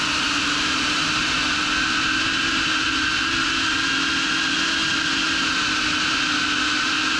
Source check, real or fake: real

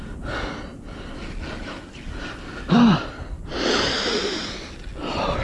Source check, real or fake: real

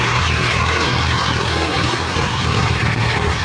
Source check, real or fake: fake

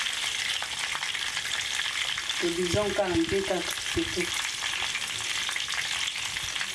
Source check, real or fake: real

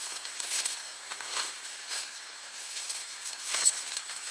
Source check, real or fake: fake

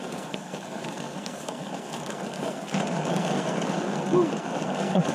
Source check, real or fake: fake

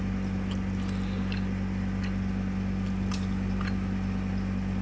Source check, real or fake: real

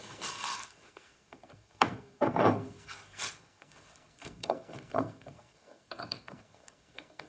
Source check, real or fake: fake